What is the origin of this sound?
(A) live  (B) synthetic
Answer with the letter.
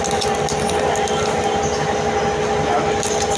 A